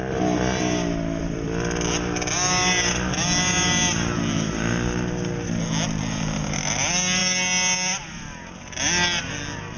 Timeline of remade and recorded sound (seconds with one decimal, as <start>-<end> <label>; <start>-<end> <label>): 0.0-9.8 recorded